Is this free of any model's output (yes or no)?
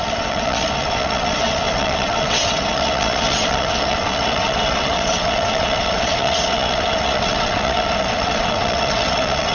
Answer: no